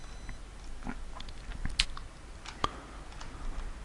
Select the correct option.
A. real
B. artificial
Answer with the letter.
A